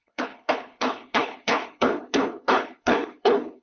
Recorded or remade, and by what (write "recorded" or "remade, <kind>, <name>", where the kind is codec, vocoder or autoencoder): remade, codec, HILCodec